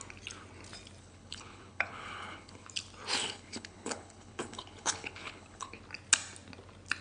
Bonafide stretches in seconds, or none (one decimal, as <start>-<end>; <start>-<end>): 0.0-1.0; 2.7-3.2; 5.8-7.0